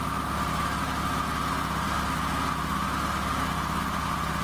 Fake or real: real